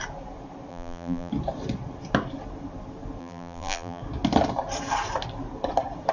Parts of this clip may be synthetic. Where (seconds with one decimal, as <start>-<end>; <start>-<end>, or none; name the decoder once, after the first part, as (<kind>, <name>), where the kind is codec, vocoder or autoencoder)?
0.7-1.3 (vocoder, BigVGAN v2); 3.2-4.0